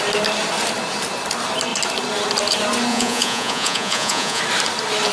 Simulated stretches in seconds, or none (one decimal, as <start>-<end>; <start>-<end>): 2.9-4.4

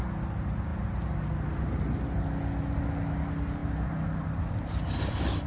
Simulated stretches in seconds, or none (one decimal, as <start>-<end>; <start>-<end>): none

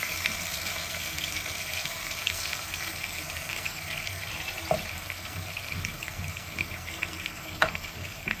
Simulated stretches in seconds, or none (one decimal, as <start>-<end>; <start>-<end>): 0.0-4.3; 4.9-8.4

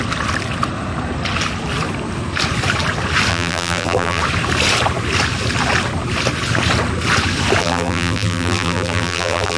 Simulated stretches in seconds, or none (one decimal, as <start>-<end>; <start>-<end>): 3.3-4.2; 7.6-9.6

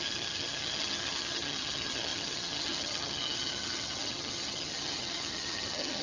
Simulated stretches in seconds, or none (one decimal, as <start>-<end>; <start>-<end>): 0.0-6.0

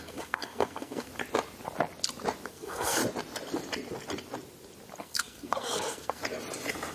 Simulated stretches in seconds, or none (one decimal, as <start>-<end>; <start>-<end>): 0.0-1.1; 2.5-3.0; 5.0-6.2

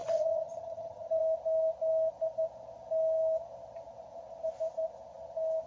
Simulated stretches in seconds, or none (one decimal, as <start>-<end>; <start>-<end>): 0.0-1.2

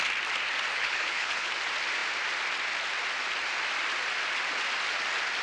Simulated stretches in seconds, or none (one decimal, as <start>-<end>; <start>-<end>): 0.7-1.5